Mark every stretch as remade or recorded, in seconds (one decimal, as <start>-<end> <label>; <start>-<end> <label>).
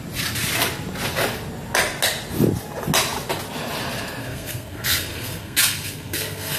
0.0-4.2 recorded; 4.2-6.6 remade